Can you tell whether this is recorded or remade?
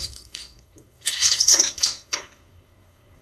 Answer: remade